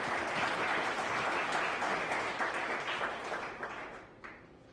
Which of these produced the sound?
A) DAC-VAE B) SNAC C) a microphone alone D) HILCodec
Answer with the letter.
C